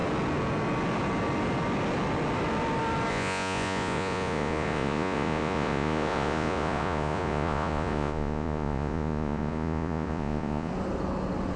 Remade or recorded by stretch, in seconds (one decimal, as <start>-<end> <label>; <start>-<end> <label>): 0.0-3.1 recorded; 3.1-10.7 remade; 10.7-11.6 recorded